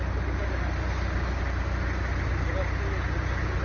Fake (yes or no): no